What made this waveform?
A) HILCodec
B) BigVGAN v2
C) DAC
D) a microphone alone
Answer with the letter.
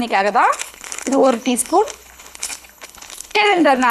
A